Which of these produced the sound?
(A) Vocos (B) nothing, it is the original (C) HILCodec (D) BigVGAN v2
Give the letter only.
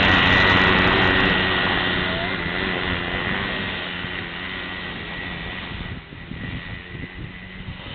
B